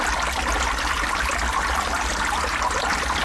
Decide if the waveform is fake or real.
real